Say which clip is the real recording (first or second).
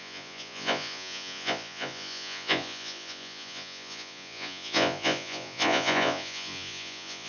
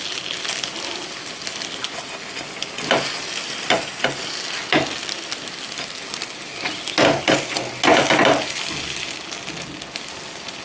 second